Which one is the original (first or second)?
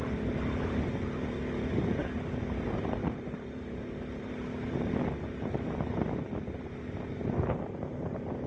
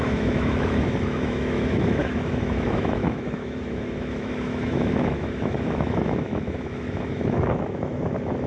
first